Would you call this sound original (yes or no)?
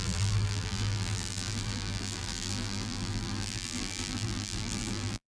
no